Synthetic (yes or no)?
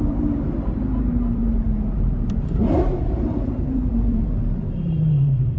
yes